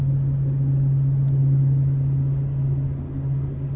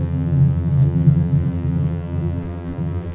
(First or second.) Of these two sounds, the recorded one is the first